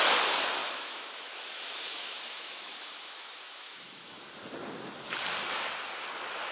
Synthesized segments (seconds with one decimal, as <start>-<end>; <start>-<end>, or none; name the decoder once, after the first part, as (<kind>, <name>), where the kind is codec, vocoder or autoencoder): 0.6-4.2 (autoencoder, DAC-VAE)